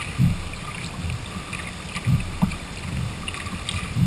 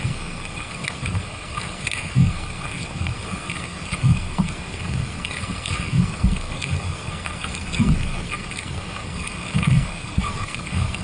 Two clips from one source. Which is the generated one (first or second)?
second